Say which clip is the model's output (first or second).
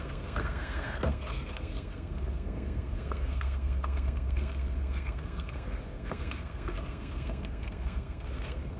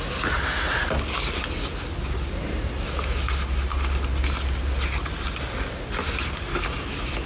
first